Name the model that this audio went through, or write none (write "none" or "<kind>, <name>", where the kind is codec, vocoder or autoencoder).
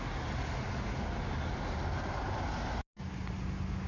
none